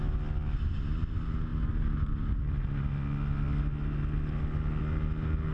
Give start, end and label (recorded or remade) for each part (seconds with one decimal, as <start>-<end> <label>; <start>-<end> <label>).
0.0-5.5 recorded